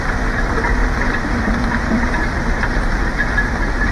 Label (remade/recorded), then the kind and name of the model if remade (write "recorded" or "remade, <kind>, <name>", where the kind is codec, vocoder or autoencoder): remade, vocoder, BigVGAN v2